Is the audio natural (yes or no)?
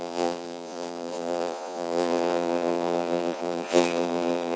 no